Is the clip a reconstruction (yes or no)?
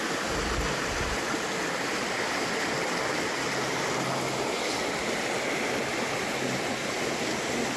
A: no